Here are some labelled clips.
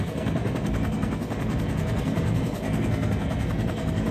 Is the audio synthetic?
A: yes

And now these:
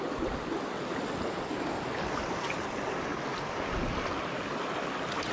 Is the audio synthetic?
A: no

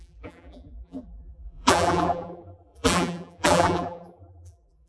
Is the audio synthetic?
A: yes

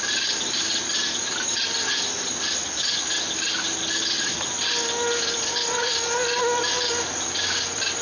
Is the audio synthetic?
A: no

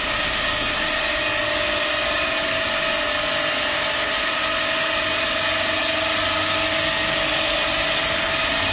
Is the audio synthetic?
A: no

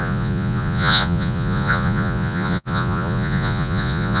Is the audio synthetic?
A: yes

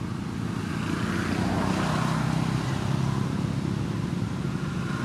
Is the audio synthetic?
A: no